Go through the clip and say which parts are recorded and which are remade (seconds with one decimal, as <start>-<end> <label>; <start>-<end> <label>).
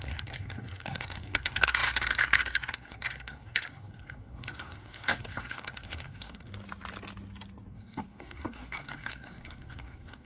0.0-6.5 remade; 6.5-7.7 recorded; 7.7-10.3 remade